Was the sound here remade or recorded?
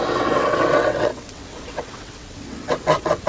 remade